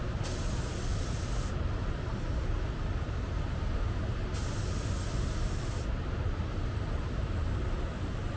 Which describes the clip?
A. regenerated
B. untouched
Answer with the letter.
B